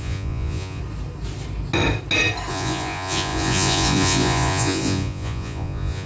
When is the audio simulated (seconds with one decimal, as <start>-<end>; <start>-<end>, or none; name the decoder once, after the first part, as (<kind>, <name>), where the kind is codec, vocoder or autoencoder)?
0.0-0.8 (vocoder, Vocos); 2.5-6.1

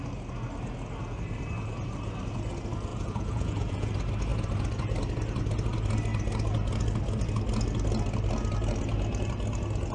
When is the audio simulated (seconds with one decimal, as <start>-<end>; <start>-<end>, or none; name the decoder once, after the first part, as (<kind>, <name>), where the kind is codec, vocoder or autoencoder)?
2.9-3.9 (vocoder, Vocos)

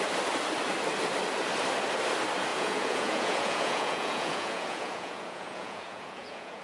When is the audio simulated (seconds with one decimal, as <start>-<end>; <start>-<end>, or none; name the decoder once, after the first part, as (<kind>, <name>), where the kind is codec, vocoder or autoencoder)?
2.5-6.6 (vocoder, Vocos)